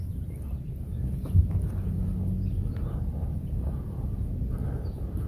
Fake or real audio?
real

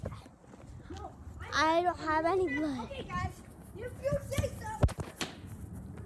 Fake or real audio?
real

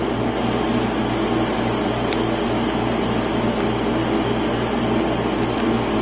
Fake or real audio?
real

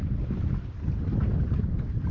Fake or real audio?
real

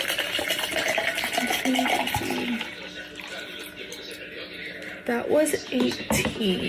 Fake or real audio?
real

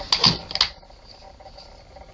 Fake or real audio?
real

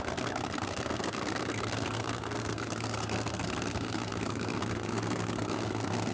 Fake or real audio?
fake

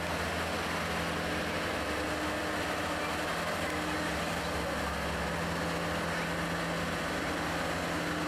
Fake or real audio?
real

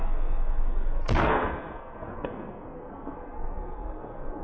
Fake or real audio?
fake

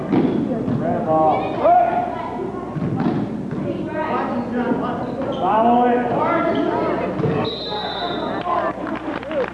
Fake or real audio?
real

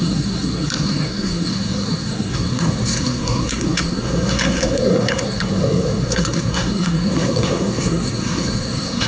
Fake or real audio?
fake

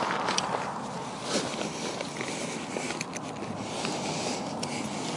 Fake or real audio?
real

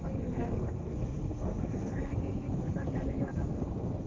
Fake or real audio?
fake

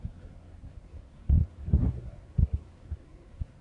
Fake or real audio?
fake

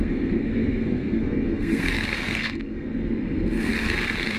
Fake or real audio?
fake